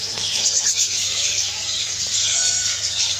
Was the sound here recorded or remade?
remade